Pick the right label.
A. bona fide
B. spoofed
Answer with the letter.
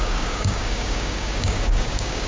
B